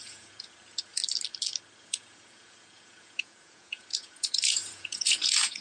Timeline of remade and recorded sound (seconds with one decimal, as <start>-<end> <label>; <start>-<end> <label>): 0.0-1.0 remade; 1.0-1.8 recorded; 1.8-5.6 remade